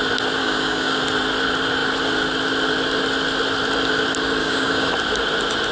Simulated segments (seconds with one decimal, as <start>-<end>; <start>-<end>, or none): 0.4-1.0; 4.4-4.9